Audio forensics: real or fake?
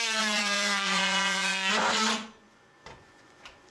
fake